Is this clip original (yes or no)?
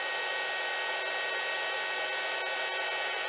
yes